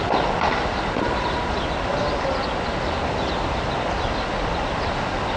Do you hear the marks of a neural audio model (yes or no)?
no